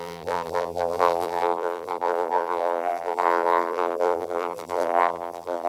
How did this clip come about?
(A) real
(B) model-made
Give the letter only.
B